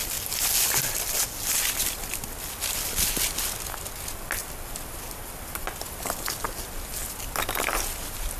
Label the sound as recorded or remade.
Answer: recorded